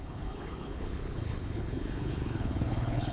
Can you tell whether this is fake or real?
fake